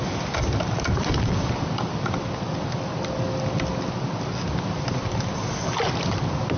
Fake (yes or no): no